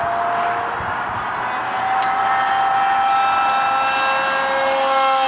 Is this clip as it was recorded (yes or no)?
yes